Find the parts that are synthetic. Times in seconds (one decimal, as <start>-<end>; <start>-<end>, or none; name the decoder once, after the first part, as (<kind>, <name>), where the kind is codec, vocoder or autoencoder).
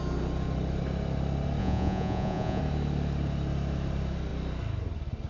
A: 1.6-2.6 (vocoder, Vocos)